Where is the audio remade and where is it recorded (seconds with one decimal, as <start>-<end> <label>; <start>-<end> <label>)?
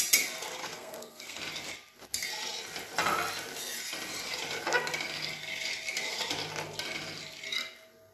0.0-0.6 recorded; 0.6-1.4 remade; 1.4-8.1 recorded